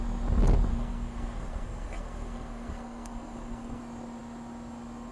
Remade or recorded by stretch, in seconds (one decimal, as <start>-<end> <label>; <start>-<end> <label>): 0.0-0.7 recorded; 0.7-3.8 remade; 3.8-5.1 recorded